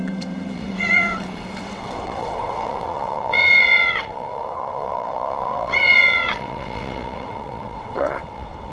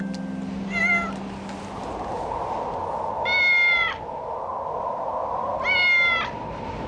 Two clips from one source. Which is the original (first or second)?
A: second